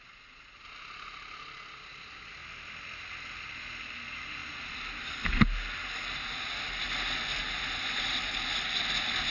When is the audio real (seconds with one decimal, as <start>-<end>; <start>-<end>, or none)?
0.0-9.3

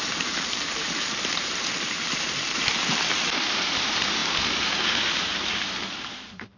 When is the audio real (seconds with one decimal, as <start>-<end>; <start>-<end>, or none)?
2.7-3.5; 4.2-5.2